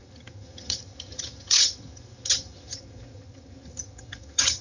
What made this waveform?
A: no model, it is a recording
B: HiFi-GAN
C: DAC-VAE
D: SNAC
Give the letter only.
B